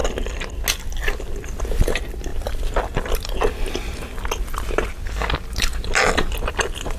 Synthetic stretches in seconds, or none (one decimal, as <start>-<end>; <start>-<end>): none